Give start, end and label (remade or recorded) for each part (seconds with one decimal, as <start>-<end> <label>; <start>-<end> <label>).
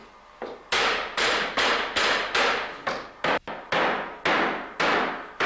0.0-1.7 remade; 1.7-5.5 recorded